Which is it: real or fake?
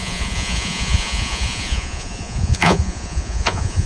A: fake